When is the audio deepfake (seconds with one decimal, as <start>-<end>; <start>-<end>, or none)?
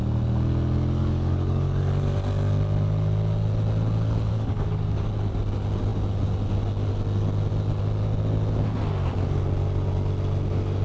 1.0-1.8; 4.3-5.1